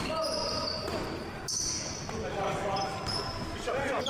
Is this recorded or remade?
remade